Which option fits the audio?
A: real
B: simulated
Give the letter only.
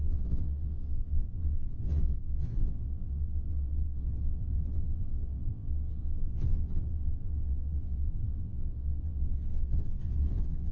B